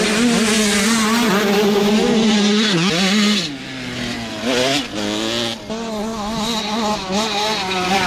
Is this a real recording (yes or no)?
yes